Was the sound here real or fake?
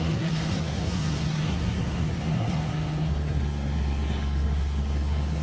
fake